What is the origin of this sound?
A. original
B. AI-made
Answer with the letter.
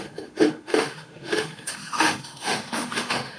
B